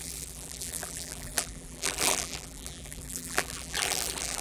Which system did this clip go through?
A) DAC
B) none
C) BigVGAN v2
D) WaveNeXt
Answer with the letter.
C